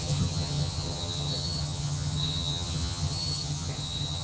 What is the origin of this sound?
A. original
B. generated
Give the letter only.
B